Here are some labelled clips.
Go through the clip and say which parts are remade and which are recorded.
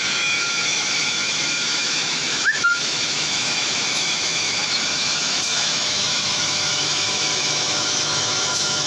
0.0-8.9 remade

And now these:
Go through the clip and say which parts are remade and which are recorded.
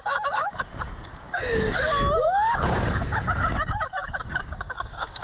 0.0-5.2 remade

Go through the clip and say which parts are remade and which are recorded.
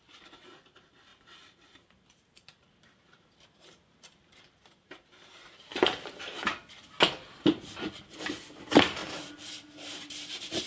0.0-1.1 recorded; 1.1-6.2 remade; 6.2-9.0 recorded; 9.0-10.7 remade